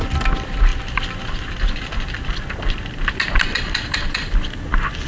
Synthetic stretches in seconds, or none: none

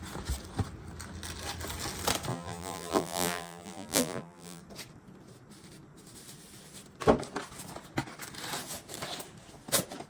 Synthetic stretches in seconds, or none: 2.3-4.6 (vocoder, BigVGAN v2)

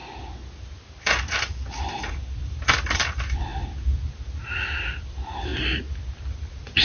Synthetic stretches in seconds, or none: 2.0-3.5 (vocoder, BigVGAN v2); 4.8-5.5

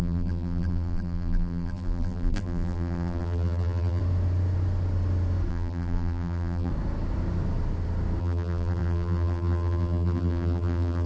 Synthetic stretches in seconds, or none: 0.0-4.0 (vocoder, BigVGAN v2); 5.5-6.7; 8.2-11.1

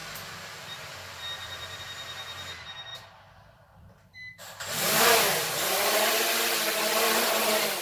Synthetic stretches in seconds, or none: 0.0-1.8 (vocoder, BigVGAN v2); 2.9-6.1

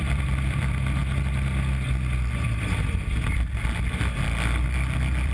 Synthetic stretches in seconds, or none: 0.0-1.0 (vocoder, BigVGAN v2); 2.3-5.3

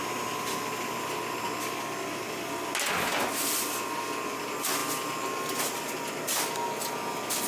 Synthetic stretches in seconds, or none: none